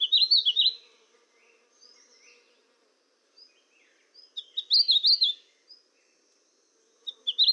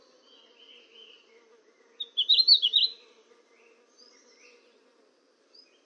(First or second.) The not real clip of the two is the second